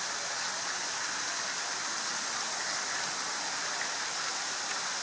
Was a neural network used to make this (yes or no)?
no